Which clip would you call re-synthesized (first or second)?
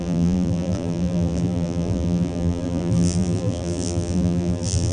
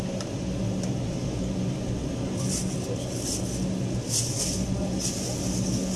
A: first